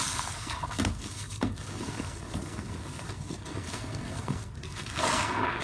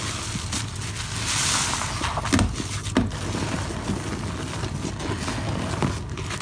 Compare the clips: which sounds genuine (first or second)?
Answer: second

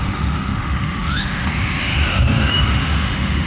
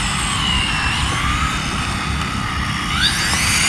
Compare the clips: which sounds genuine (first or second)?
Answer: second